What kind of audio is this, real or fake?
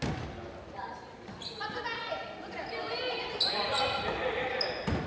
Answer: real